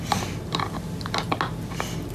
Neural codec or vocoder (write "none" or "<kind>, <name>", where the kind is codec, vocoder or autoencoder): none